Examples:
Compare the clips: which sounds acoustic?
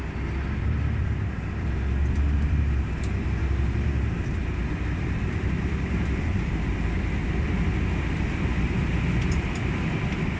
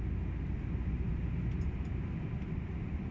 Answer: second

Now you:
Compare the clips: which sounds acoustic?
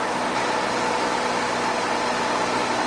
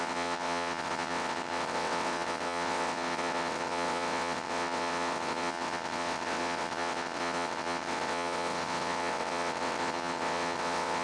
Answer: first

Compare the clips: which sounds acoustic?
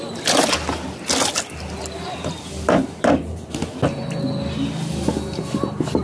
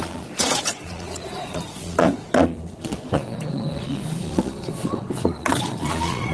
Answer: first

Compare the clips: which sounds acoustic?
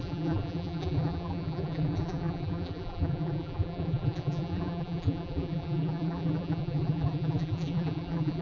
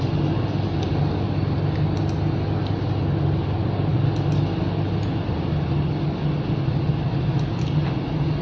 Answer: second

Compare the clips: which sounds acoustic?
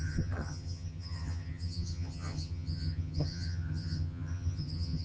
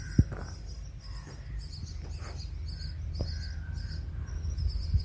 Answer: second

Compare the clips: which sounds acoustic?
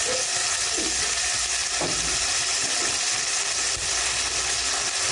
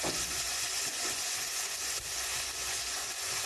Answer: first